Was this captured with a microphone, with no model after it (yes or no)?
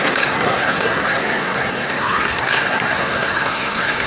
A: no